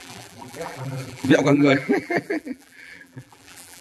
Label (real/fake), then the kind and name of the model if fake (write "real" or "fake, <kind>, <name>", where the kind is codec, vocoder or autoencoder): fake, vocoder, BigVGAN v2